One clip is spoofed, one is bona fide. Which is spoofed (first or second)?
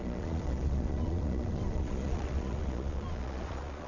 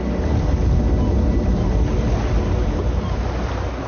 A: first